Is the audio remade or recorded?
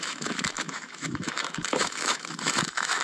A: remade